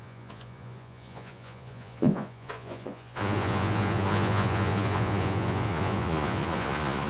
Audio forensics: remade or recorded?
remade